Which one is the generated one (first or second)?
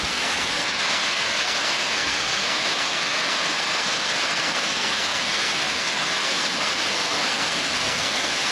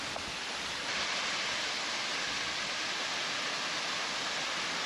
first